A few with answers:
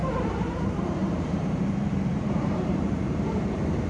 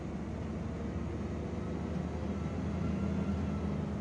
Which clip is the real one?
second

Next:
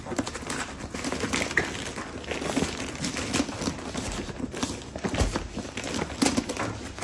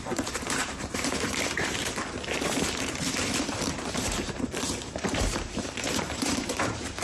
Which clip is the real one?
first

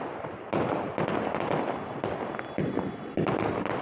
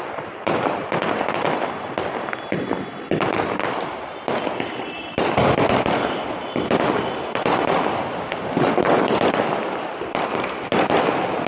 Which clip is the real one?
first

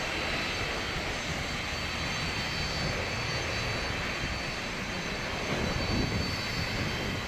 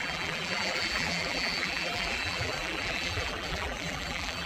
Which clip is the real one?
first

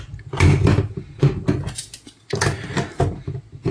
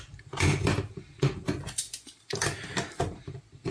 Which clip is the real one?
first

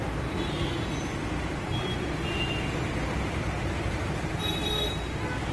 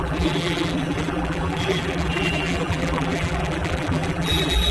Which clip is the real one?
first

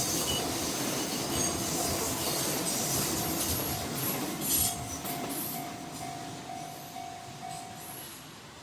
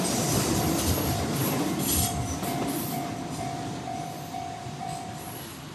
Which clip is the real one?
first